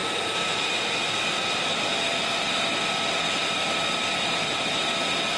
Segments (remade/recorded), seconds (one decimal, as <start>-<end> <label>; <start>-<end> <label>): 0.0-5.4 recorded